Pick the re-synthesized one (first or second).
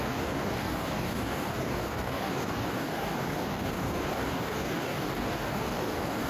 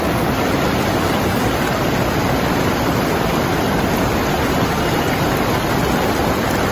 first